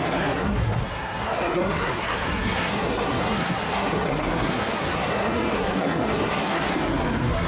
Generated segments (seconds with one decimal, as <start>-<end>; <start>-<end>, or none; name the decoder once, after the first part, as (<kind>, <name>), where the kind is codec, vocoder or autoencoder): 0.0-7.5 (codec, SNAC)